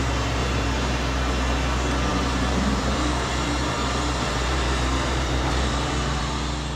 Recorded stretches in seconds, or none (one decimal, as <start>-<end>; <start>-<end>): 0.0-0.4; 1.3-2.1; 6.2-6.8

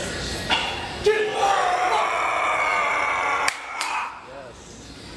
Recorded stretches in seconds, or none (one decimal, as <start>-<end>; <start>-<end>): 0.8-1.3; 2.0-2.7

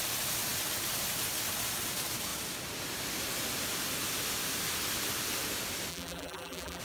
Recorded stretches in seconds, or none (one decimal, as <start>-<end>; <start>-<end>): 0.0-5.9

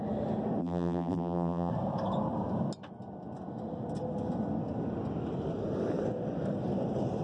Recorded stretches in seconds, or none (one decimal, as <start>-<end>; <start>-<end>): 0.0-0.6; 1.7-7.2

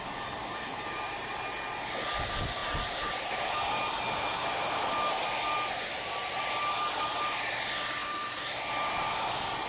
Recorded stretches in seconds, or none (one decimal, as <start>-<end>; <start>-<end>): 0.0-0.4; 1.2-8.0; 8.7-9.7

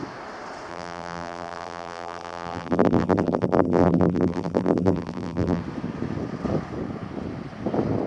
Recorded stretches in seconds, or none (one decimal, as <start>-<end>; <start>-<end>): 0.0-0.7; 5.6-8.1

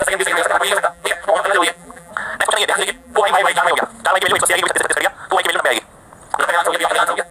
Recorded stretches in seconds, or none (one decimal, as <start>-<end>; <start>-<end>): 2.1-2.7; 3.7-6.4